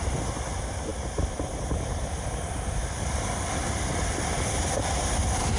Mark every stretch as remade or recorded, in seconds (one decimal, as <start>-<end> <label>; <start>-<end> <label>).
0.0-5.6 recorded